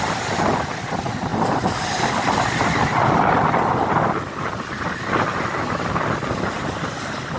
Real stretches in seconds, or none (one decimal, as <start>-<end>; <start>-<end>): 0.0-7.4